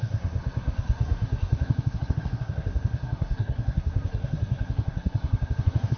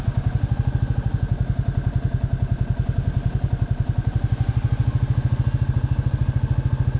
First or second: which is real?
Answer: second